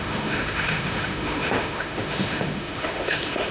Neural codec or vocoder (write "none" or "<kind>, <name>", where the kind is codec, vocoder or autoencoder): autoencoder, DAC-VAE